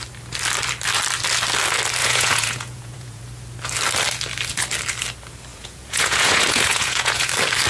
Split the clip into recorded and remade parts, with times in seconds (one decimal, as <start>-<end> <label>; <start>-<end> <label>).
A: 0.0-2.0 recorded; 2.0-3.2 remade; 3.2-5.5 recorded; 5.5-7.3 remade; 7.3-7.7 recorded